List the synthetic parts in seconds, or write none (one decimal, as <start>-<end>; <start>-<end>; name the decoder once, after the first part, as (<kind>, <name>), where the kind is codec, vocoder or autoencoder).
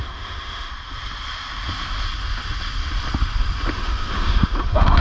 0.0-0.7 (autoencoder, DAC-VAE); 3.7-5.0